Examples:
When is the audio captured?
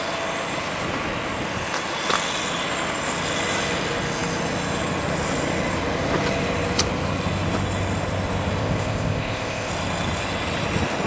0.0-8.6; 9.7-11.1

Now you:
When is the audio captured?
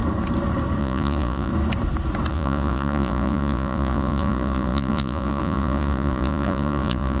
0.0-0.8; 1.5-2.3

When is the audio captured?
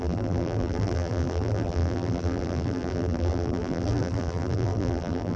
none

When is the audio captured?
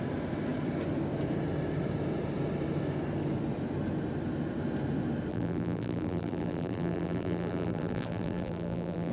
0.0-5.3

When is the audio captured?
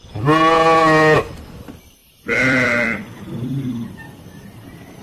0.0-2.0; 3.2-5.0